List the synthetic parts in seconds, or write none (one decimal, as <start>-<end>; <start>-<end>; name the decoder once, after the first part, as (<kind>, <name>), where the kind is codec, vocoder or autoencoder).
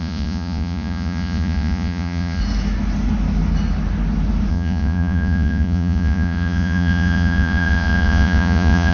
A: 0.0-2.4 (vocoder, Vocos); 4.5-8.9